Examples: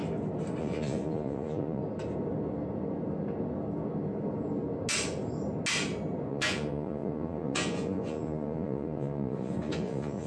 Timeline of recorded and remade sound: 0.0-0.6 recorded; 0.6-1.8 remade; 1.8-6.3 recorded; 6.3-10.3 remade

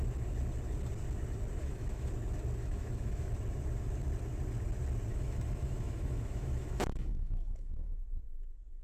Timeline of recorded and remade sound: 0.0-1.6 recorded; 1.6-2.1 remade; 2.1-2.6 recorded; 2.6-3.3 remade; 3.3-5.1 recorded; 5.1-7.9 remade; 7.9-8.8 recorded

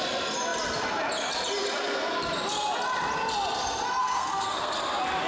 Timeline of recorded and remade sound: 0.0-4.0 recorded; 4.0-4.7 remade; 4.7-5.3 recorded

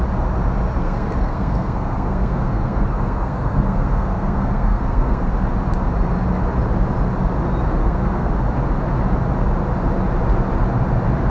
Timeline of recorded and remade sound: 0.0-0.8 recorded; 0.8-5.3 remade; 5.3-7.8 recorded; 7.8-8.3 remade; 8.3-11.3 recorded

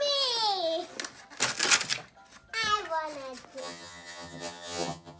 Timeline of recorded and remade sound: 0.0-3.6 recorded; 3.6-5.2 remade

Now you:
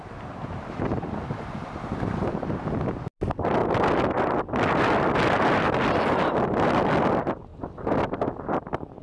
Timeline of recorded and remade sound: 0.0-9.0 recorded